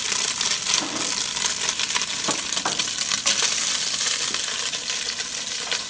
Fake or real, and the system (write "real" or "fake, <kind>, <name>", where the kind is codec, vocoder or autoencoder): real